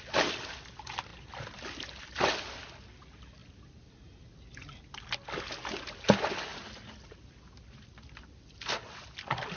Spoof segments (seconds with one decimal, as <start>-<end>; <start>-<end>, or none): none